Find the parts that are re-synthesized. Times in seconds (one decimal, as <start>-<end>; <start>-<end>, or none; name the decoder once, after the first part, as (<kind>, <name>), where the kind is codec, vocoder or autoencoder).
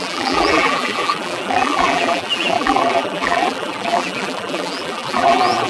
0.0-5.7 (vocoder, BigVGAN v2)